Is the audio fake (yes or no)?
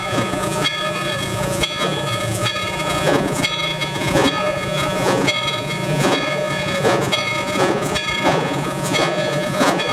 yes